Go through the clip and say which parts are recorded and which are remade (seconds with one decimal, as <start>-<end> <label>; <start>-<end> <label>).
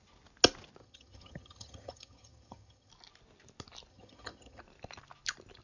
0.0-0.8 recorded; 0.8-2.9 remade; 2.9-3.9 recorded; 3.9-4.6 remade; 4.6-5.6 recorded